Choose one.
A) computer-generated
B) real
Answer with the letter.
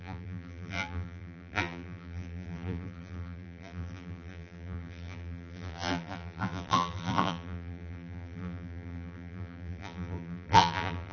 A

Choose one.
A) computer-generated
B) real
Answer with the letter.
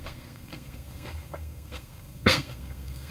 A